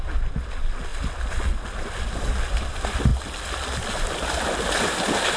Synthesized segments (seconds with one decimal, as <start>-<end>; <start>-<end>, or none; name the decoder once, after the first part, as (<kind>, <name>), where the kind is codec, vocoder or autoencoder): none